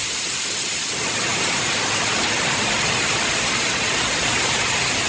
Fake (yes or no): no